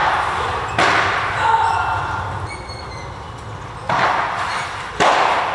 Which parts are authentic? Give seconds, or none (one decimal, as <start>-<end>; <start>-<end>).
0.0-5.5